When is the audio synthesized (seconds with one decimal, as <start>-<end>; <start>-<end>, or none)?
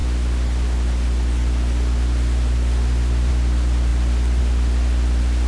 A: none